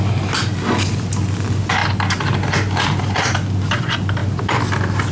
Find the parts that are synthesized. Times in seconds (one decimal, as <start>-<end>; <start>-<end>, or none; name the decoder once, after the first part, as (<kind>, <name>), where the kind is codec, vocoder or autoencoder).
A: none